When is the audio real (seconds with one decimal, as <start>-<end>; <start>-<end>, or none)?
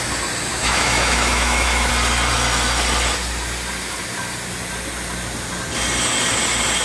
0.0-0.5; 1.9-6.8